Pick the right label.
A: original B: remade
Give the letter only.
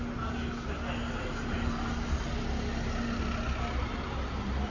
A